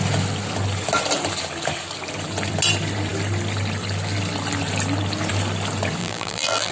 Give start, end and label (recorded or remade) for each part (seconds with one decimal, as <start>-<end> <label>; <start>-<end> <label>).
0.0-6.0 recorded; 6.0-6.7 remade